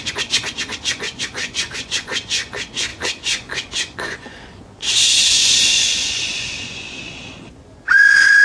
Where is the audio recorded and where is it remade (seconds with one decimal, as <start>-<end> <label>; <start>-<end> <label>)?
0.0-8.4 remade